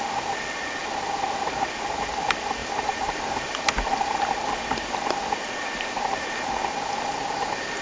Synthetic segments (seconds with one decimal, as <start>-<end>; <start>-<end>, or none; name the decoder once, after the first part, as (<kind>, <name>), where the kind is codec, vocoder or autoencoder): 2.6-4.5 (vocoder, BigVGAN v2); 5.6-6.5